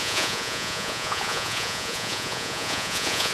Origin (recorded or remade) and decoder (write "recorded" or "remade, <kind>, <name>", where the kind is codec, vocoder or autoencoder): remade, vocoder, Vocos